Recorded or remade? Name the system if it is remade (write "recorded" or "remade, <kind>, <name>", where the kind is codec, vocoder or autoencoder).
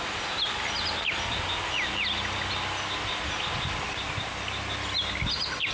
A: recorded